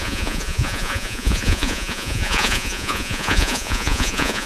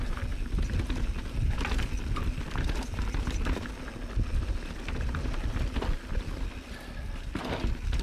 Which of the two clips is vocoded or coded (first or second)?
first